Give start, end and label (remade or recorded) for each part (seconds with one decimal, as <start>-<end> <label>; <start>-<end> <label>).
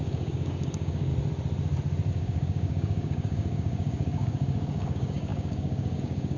0.0-1.1 remade; 1.1-2.1 recorded; 2.1-6.4 remade